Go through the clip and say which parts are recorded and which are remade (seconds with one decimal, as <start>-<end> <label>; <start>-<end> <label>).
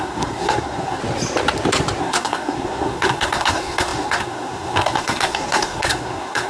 0.0-1.0 remade; 1.0-2.0 recorded; 2.0-6.5 remade